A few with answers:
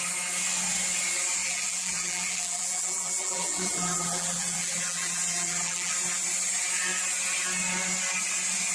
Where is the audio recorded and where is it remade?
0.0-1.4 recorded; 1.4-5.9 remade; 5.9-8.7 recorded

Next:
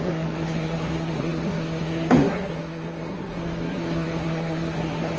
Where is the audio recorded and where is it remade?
0.0-5.2 remade

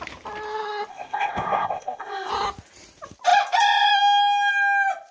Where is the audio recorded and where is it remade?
0.0-0.9 recorded; 0.9-2.3 remade; 2.3-5.1 recorded

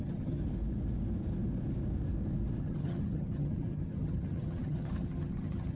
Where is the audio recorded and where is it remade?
0.0-0.4 remade; 0.4-2.6 recorded; 2.6-5.8 remade